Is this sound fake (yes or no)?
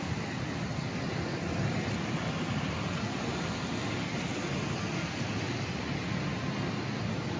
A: no